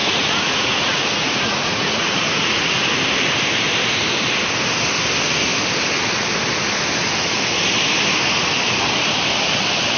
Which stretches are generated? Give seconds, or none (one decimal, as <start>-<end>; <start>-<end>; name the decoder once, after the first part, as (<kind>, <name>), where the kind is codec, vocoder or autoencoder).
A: 0.0-2.7 (vocoder, Vocos)